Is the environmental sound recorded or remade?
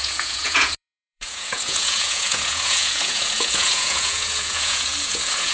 remade